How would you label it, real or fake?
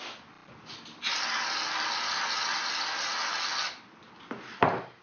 real